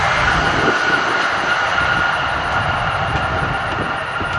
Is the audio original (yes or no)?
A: yes